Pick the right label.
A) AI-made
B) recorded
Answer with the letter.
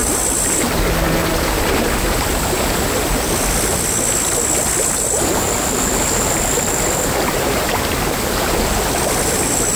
B